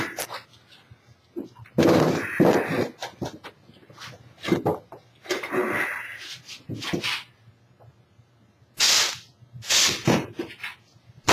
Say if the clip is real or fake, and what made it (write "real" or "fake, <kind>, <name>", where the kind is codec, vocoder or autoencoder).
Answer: real